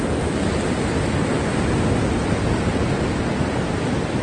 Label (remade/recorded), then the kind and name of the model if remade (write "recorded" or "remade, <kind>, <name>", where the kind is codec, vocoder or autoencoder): recorded